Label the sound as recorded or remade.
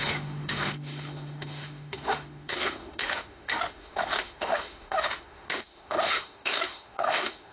remade